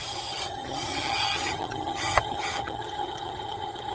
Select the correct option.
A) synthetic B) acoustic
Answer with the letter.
A